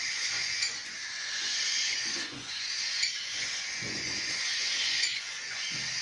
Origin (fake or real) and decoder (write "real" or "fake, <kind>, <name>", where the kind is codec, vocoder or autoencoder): fake, vocoder, Vocos